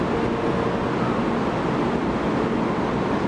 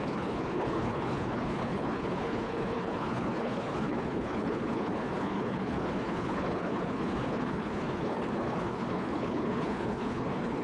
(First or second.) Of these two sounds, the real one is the first